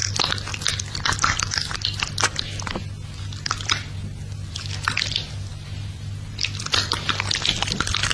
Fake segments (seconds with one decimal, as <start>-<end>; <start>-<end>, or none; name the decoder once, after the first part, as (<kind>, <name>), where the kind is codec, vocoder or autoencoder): none

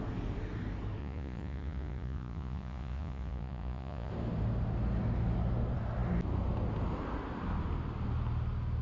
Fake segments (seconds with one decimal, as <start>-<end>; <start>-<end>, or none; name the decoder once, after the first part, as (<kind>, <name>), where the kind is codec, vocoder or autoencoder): 1.0-4.1 (vocoder, Vocos)

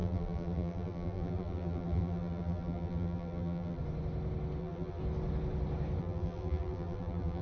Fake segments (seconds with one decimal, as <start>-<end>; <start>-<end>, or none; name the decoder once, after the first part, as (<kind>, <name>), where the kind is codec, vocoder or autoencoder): 0.0-3.8 (vocoder, BigVGAN v2); 4.6-5.0; 6.0-7.4

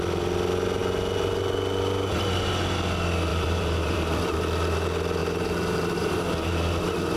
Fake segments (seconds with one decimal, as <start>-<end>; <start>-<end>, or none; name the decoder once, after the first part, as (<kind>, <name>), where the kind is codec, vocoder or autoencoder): 3.3-4.1 (vocoder, BigVGAN v2); 5.2-6.1

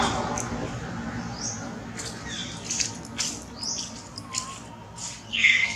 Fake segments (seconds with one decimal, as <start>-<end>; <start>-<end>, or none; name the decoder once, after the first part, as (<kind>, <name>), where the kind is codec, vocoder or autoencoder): 5.3-5.8 (codec, SNAC)

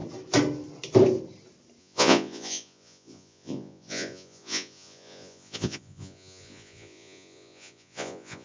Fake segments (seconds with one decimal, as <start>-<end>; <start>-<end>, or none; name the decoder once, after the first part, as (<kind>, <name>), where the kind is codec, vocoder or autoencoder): 1.8-8.4 (vocoder, Vocos)

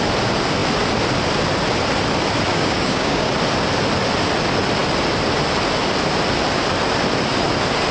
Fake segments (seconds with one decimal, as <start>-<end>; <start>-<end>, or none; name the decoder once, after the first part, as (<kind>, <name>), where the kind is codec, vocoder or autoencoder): 2.5-3.3 (codec, DAC)

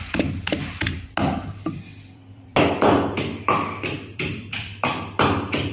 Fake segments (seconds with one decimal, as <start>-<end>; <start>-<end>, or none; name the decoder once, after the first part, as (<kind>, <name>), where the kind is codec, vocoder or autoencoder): 0.0-0.9 (vocoder, BigVGAN v2); 2.1-5.7